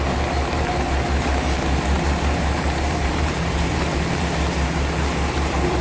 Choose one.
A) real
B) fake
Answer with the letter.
B